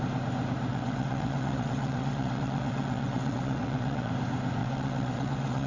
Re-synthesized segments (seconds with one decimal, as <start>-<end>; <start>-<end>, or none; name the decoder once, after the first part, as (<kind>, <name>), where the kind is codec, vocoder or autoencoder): 0.7-4.1 (vocoder, WaveNeXt); 4.6-5.7